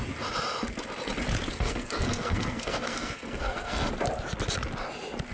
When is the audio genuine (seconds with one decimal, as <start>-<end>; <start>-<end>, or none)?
0.0-1.5; 3.9-5.3